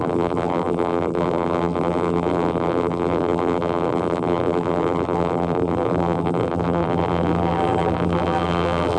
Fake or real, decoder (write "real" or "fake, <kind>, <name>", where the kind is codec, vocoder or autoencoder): fake, vocoder, BigVGAN v2